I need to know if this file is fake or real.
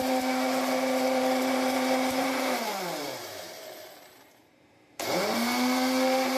fake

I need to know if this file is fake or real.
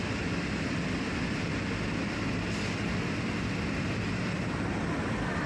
fake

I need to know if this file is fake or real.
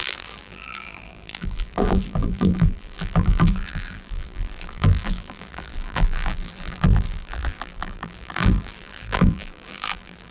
fake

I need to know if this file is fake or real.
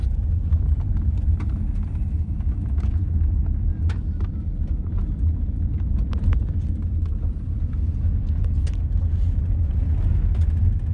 real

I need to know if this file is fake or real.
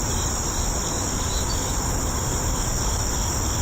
real